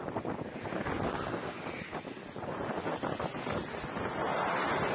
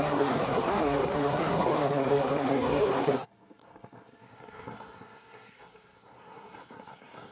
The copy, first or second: second